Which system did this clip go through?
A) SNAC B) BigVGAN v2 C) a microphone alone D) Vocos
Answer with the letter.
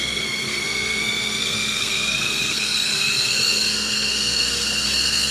A